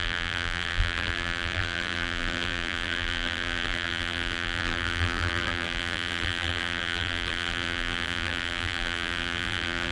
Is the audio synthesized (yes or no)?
yes